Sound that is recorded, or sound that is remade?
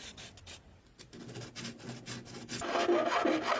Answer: recorded